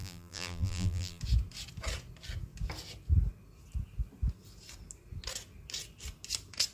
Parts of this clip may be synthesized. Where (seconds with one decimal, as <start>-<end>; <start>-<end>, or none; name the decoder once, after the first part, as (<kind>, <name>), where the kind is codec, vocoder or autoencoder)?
0.0-1.2 (vocoder, BigVGAN v2)